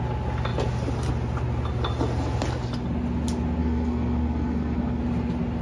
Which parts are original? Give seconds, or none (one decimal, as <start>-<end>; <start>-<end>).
0.0-3.6; 5.0-5.6